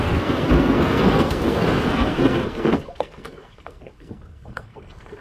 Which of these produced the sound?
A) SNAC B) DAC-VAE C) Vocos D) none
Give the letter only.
A